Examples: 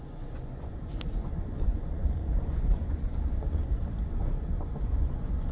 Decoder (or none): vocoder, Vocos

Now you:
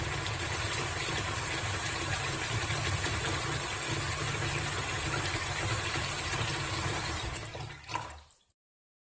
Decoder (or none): vocoder, BigVGAN v2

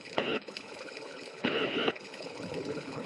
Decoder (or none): codec, HILCodec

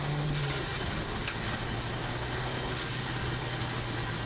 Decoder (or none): none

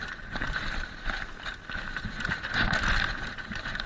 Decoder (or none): none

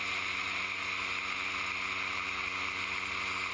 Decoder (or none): none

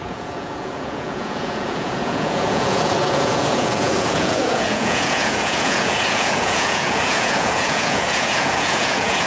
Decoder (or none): vocoder, Vocos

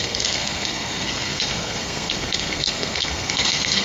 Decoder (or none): codec, SNAC